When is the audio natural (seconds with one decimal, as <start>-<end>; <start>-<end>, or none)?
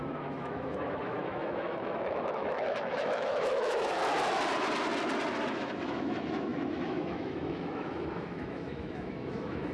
4.0-5.5